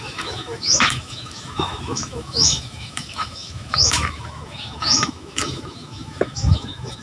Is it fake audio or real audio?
fake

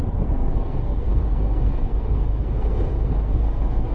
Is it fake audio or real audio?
fake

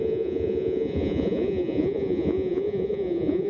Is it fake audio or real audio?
fake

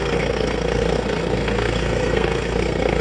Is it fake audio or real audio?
fake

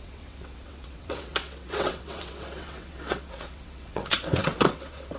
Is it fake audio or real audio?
fake